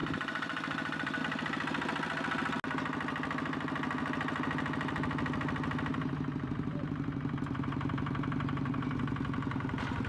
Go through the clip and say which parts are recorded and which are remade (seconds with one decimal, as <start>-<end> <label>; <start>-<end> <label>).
0.0-1.2 remade; 1.2-5.9 recorded; 5.9-9.0 remade; 9.0-10.1 recorded